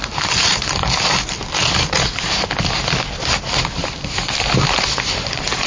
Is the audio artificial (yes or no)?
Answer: no